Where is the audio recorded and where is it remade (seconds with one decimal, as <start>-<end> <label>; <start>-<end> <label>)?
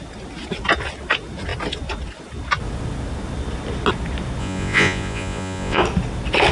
0.0-4.4 recorded; 4.4-5.8 remade; 5.8-6.5 recorded